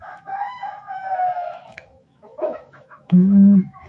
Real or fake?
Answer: fake